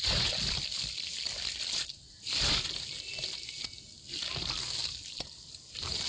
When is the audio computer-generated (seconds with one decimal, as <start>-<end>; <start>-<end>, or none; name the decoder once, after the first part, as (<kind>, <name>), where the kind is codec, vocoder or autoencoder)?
none